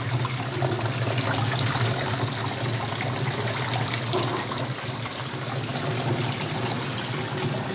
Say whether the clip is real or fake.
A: real